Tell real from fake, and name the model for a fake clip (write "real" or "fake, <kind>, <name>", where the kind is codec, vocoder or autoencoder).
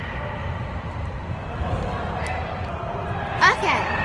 real